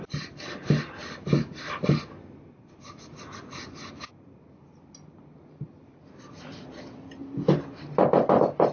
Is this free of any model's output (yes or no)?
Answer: yes